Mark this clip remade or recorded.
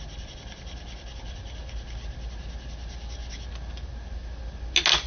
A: recorded